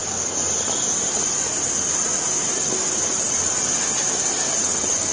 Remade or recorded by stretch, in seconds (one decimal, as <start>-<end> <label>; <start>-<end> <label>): 0.0-5.1 remade